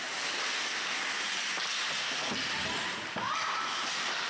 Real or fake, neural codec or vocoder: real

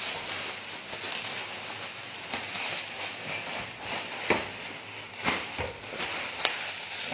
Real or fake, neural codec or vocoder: real